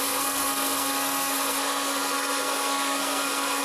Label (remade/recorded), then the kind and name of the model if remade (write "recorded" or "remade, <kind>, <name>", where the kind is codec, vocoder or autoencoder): remade, codec, SNAC